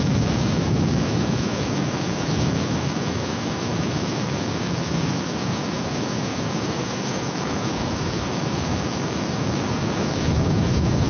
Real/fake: fake